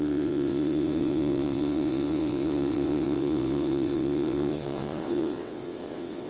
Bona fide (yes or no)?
no